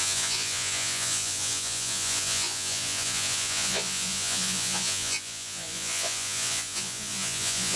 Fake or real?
fake